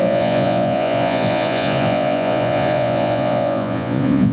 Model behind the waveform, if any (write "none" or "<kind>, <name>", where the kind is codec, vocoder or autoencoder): vocoder, Vocos